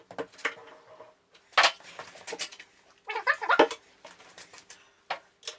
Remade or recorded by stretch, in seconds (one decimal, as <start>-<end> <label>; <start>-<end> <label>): 0.0-5.6 recorded